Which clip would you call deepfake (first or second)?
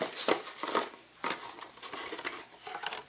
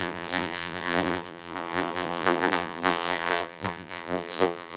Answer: second